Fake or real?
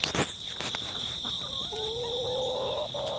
real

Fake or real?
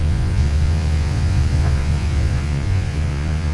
fake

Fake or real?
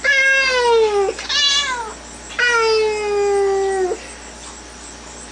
real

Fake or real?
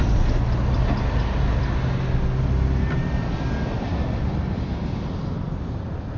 real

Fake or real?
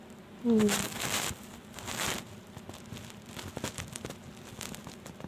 real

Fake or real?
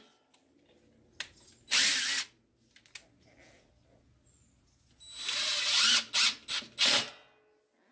real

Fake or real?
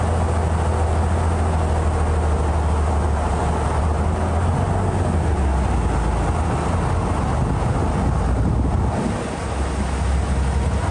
real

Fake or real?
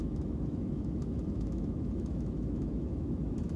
fake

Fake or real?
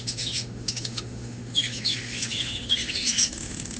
fake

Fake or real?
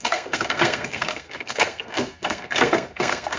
fake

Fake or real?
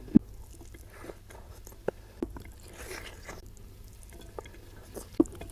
real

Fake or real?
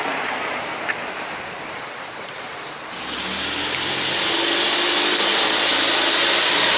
real